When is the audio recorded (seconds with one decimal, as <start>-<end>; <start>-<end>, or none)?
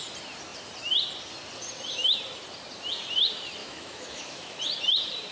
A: 0.0-3.6; 4.6-5.3